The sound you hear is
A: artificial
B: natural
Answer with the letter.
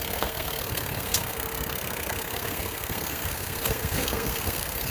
A